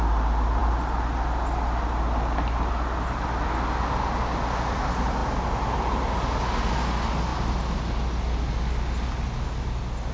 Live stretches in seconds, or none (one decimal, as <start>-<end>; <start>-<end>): 0.0-10.1